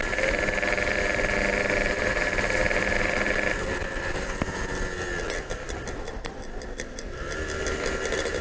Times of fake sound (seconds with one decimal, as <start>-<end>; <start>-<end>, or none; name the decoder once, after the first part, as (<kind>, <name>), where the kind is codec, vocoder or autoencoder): none